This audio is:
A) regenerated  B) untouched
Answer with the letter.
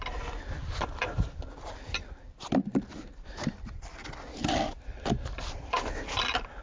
B